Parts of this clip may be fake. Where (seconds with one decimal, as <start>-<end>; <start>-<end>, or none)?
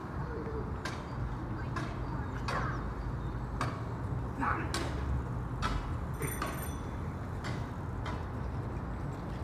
none